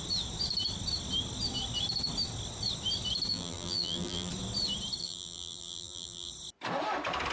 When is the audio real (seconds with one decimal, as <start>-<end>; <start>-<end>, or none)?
0.0-3.3; 4.3-5.0; 6.3-7.3